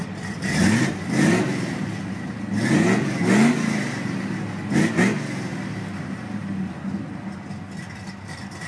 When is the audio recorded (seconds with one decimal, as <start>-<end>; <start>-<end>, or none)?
0.0-8.7